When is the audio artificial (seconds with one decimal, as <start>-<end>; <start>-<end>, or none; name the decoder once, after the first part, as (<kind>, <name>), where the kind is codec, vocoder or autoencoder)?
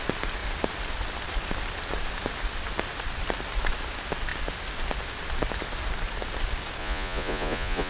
6.8-7.9 (vocoder, Vocos)